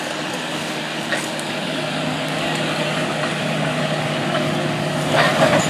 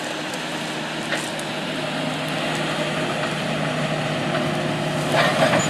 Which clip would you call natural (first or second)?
second